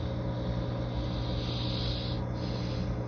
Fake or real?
real